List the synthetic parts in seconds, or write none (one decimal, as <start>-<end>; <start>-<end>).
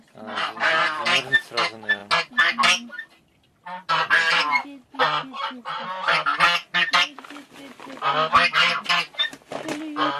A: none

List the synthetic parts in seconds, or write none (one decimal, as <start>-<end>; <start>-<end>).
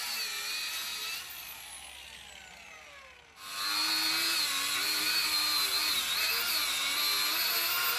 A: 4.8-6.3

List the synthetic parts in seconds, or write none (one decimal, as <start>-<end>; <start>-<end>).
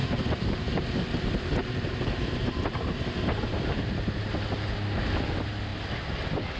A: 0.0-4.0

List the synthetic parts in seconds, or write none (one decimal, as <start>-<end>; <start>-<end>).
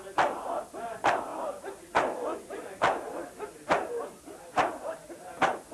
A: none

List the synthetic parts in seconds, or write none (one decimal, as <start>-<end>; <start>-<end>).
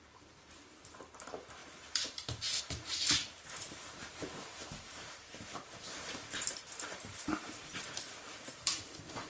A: 0.0-9.3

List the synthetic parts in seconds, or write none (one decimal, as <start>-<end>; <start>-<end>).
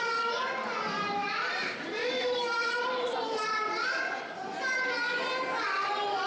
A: 1.2-4.7